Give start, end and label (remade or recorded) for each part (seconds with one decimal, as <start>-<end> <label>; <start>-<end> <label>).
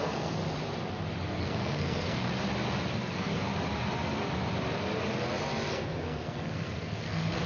0.0-0.4 remade; 0.4-1.4 recorded; 1.4-2.3 remade; 2.3-3.1 recorded; 3.1-3.5 remade; 3.5-5.7 recorded; 5.7-7.5 remade